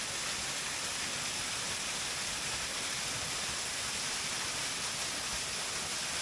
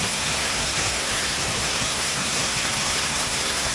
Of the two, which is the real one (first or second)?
first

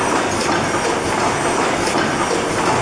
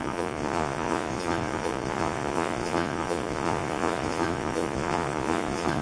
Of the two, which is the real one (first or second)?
first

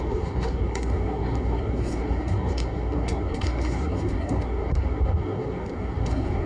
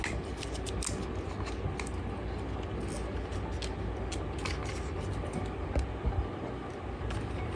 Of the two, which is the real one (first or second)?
second